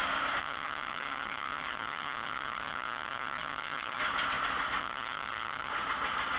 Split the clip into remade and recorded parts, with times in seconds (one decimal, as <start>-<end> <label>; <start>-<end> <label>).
0.0-0.4 recorded; 0.4-4.0 remade; 4.0-4.8 recorded; 4.8-5.7 remade; 5.7-6.4 recorded